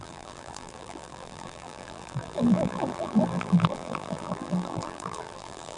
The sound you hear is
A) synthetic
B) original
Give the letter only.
A